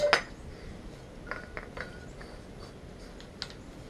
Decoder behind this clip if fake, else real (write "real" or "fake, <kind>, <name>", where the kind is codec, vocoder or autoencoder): real